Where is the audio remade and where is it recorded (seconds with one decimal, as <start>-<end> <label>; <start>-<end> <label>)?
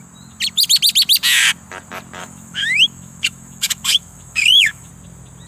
0.0-2.2 recorded; 2.2-4.9 remade; 4.9-5.5 recorded